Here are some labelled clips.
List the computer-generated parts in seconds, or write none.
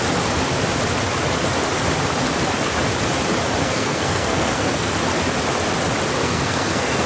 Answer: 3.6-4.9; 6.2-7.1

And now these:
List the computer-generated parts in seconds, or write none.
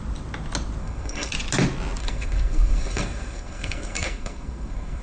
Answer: 0.8-1.3; 2.0-5.0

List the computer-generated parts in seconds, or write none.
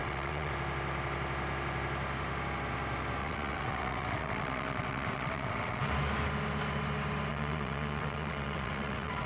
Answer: 0.0-0.5; 3.2-5.9; 7.3-9.3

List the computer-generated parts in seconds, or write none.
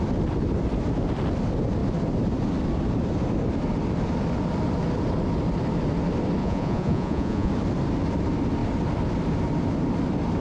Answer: 6.4-7.5